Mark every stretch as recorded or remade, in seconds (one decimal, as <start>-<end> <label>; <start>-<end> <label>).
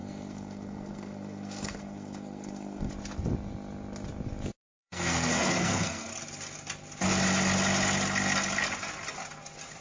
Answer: 0.0-2.9 remade; 2.9-4.6 recorded; 4.6-6.1 remade; 6.1-9.8 recorded